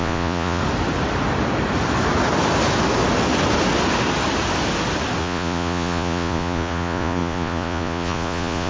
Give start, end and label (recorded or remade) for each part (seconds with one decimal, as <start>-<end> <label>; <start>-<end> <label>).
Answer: 0.0-0.6 remade; 0.6-5.2 recorded; 5.2-8.7 remade